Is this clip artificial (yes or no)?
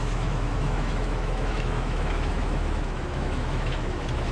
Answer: yes